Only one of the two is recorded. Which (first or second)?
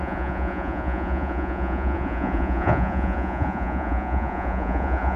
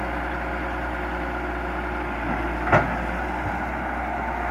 second